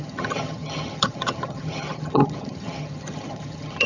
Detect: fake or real fake